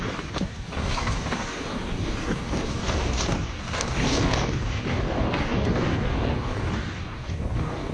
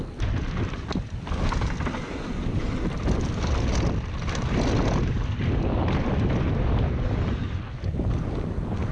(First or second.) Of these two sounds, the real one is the second